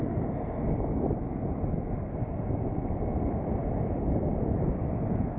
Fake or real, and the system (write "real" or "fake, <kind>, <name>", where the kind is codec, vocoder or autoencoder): real